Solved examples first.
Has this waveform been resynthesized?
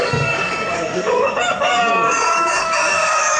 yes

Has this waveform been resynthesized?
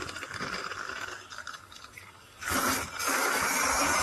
yes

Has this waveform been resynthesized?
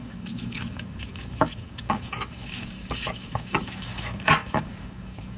yes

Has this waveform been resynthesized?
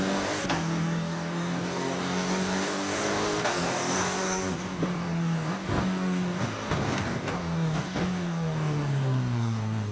yes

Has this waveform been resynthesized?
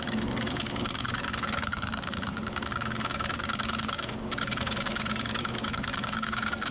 yes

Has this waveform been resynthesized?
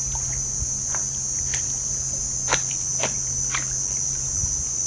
no